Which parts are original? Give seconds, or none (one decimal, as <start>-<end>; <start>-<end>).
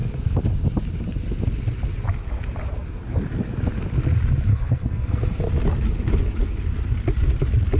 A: 0.0-4.5; 5.4-7.8